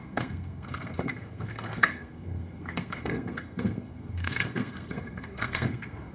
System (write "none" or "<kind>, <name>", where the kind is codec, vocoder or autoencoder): codec, SNAC